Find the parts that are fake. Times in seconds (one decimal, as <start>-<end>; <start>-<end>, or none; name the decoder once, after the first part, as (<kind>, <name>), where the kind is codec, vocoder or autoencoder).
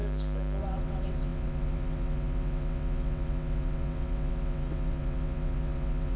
0.6-6.2 (vocoder, WaveNeXt)